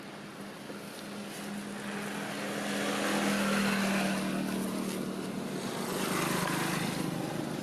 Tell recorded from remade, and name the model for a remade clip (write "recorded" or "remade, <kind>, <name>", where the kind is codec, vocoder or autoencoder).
recorded